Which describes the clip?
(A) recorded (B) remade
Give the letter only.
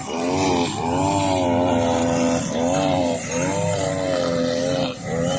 A